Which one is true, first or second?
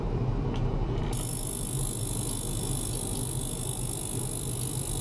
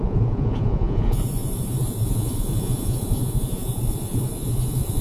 first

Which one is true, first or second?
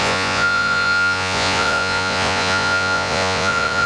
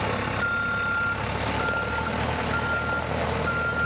second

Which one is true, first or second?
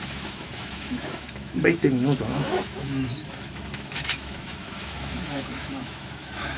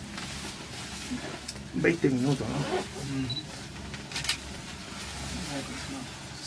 second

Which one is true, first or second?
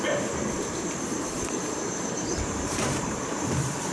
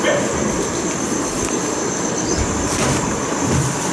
second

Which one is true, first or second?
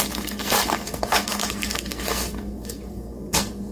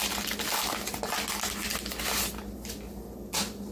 second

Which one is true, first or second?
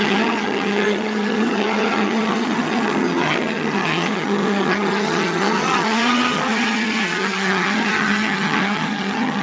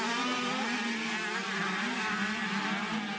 second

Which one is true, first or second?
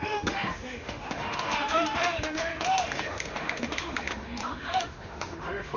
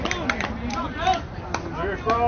second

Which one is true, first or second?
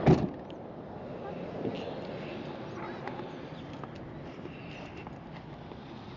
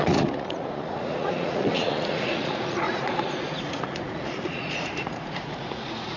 first